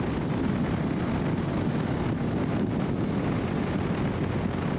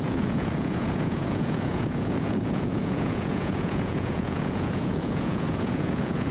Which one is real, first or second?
first